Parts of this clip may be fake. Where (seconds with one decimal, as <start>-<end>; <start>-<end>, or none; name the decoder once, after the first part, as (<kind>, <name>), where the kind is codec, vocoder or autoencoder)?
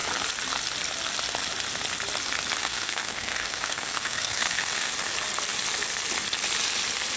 2.6-4.9 (codec, SNAC)